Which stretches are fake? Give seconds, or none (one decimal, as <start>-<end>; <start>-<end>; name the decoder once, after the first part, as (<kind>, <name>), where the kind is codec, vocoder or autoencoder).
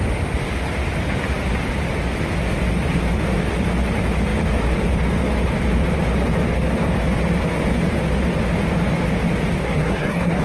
9.6-10.4 (codec, SNAC)